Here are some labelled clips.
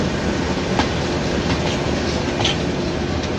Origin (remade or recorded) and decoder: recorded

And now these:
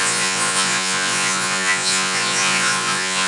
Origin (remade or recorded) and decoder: remade, vocoder, Vocos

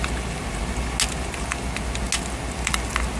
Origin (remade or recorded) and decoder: recorded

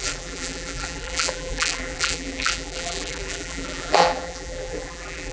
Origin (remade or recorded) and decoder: remade, vocoder, BigVGAN v2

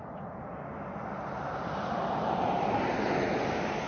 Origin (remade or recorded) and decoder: recorded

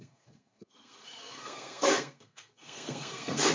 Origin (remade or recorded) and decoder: remade, codec, SNAC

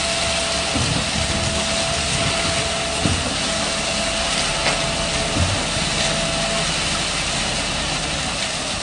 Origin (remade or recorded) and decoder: recorded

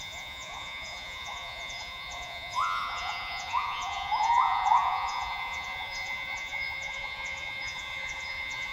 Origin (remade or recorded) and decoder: remade, vocoder, Vocos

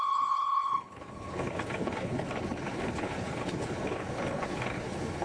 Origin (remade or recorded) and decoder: remade, codec, HILCodec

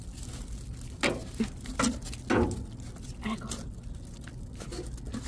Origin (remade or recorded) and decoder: recorded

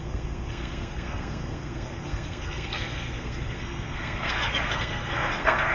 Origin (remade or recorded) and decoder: remade, codec, SNAC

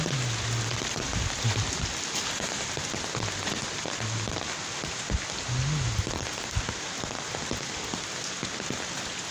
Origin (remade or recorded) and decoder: recorded